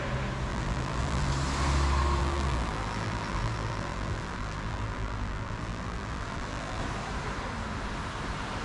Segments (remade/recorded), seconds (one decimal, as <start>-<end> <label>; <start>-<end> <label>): 0.0-0.5 recorded; 0.5-1.3 remade; 1.3-2.2 recorded; 2.2-6.8 remade; 6.8-8.6 recorded